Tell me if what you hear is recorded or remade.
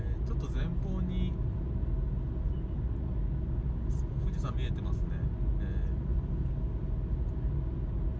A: recorded